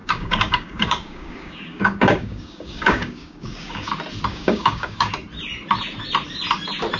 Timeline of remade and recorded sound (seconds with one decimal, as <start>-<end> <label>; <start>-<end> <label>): 0.0-3.9 remade; 3.9-4.3 recorded; 4.3-5.1 remade; 5.1-7.0 recorded